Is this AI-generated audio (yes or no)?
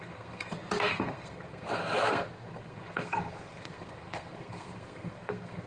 yes